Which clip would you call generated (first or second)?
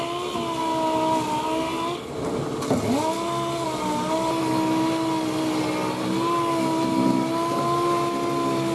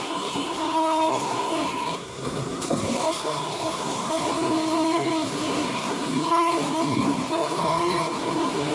second